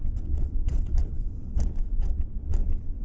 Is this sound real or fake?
fake